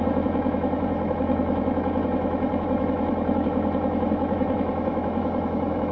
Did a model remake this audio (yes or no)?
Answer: yes